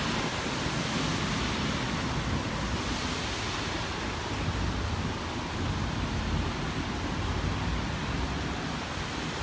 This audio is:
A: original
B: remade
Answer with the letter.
A